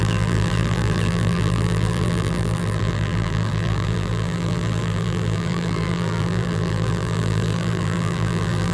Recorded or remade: remade